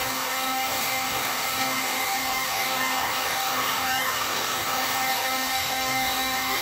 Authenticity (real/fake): fake